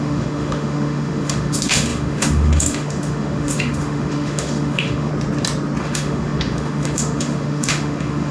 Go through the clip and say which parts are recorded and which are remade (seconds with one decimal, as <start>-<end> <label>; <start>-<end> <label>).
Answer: 0.0-5.1 remade; 5.1-5.8 recorded; 5.8-8.3 remade